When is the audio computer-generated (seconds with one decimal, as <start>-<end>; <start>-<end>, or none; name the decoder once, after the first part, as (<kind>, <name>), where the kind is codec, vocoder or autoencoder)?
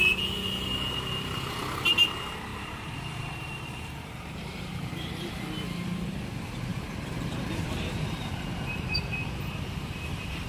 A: 2.5-5.3 (vocoder, BigVGAN v2); 6.7-8.3